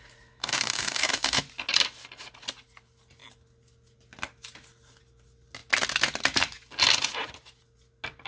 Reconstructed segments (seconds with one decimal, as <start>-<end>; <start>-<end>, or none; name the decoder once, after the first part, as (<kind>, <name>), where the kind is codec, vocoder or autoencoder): 0.4-1.4 (codec, DAC)